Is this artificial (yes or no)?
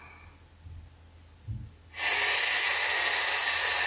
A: no